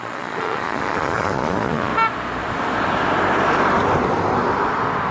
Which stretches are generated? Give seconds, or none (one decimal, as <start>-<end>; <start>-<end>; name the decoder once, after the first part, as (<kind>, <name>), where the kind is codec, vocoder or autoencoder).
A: 0.0-1.9 (vocoder, Vocos)